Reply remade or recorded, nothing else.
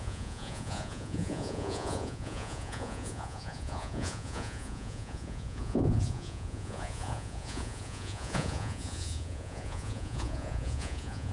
remade